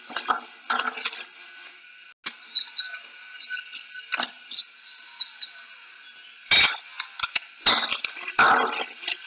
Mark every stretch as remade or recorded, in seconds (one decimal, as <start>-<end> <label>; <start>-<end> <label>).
0.0-9.3 recorded